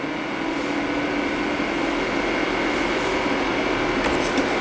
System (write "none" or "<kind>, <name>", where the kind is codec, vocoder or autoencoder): none